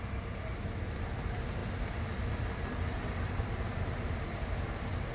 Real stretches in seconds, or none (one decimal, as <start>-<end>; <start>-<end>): 0.0-1.6